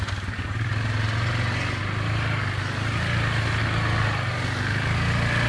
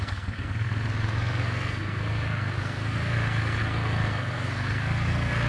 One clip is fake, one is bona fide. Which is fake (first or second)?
second